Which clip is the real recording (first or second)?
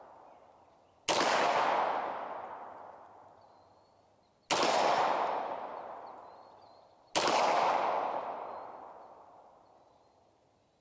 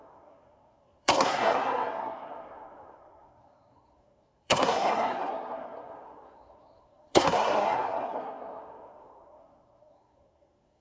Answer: first